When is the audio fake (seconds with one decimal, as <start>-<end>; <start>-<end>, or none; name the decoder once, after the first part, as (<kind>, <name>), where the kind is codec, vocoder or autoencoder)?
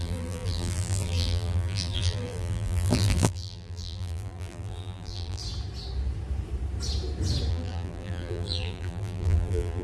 0.0-5.4 (vocoder, BigVGAN v2); 7.5-9.8